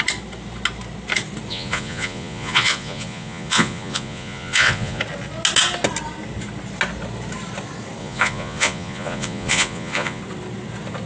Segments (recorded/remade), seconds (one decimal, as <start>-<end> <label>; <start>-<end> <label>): 0.0-1.5 recorded; 1.5-5.0 remade; 5.0-8.0 recorded; 8.0-10.2 remade; 10.2-11.1 recorded